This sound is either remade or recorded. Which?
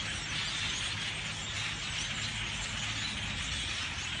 recorded